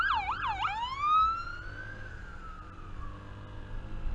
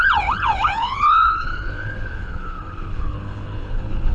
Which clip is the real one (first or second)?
first